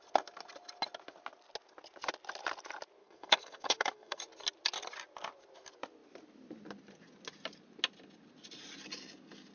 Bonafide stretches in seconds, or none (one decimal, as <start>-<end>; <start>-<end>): 0.0-3.0; 4.2-9.5